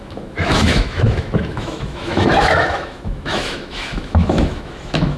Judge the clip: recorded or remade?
remade